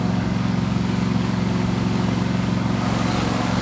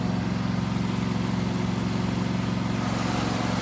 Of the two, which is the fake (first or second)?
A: first